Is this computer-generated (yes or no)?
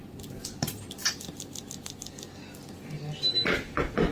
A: no